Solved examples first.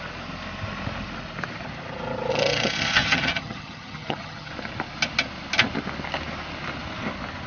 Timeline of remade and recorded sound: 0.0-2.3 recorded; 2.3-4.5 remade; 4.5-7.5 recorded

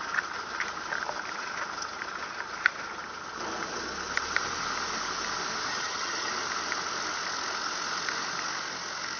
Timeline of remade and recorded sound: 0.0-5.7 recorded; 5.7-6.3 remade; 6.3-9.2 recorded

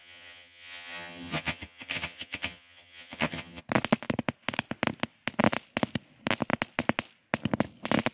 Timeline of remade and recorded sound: 0.0-3.6 remade; 3.6-8.1 recorded

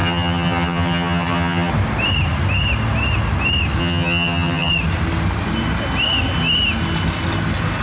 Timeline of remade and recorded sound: 0.0-1.7 remade; 1.7-3.8 recorded; 3.8-4.7 remade; 4.7-7.8 recorded

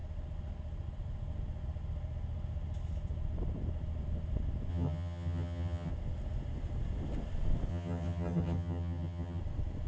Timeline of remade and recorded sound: 0.0-4.7 recorded; 4.7-5.9 remade; 5.9-7.7 recorded; 7.7-9.4 remade; 9.4-9.9 recorded

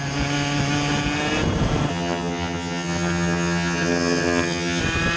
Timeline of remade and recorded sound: 0.0-1.9 recorded; 1.9-4.8 remade; 4.8-5.2 recorded

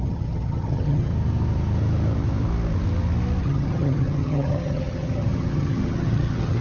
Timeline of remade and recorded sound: 0.0-1.1 remade; 1.1-3.4 recorded; 3.4-6.6 remade